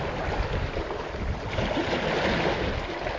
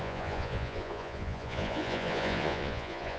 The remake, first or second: second